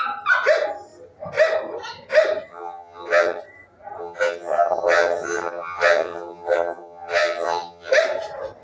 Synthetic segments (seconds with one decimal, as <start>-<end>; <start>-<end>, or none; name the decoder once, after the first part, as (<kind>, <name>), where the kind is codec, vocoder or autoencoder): 2.5-3.4 (vocoder, HiFi-GAN); 4.0-7.9